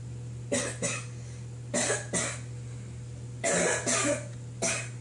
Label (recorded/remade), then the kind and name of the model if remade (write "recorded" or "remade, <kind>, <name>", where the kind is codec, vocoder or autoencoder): recorded